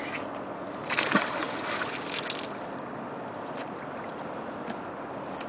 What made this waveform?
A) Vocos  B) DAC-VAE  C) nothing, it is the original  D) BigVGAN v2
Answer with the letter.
C